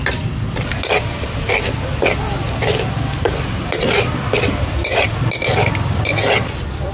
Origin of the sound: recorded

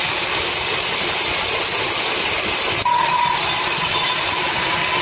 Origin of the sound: recorded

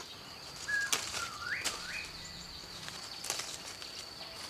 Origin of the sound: recorded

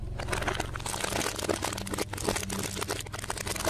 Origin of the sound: recorded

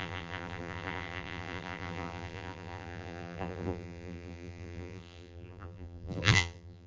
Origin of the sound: remade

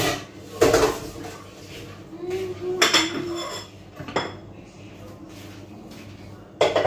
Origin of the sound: recorded